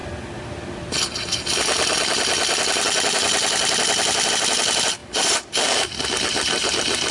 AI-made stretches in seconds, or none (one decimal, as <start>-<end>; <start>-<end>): none